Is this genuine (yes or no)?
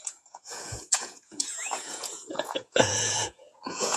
no